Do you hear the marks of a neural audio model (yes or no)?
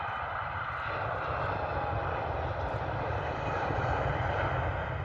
no